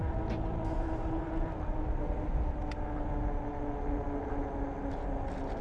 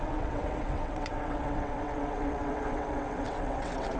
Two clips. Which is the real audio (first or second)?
first